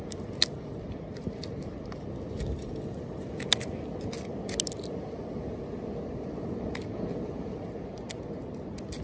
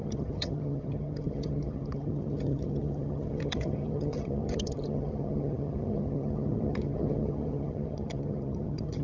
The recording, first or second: first